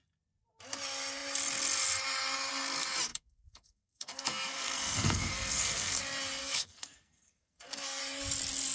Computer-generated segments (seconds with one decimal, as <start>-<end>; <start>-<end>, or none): 3.1-6.0; 6.4-8.0